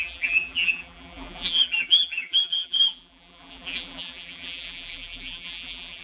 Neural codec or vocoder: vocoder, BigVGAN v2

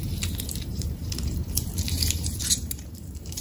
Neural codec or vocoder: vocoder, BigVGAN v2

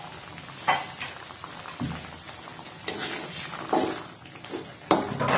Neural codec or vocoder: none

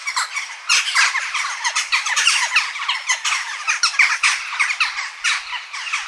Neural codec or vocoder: vocoder, BigVGAN v2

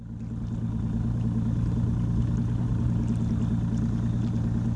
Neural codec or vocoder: none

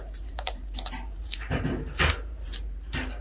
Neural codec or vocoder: vocoder, BigVGAN v2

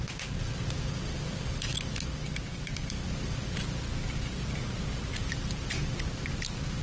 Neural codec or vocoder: none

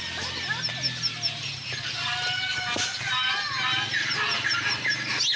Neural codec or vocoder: none